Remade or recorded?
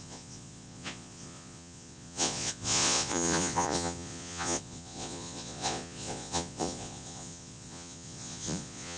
remade